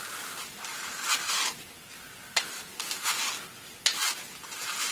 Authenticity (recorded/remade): recorded